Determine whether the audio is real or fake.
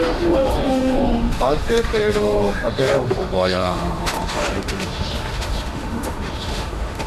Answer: fake